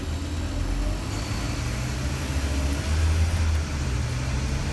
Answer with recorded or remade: recorded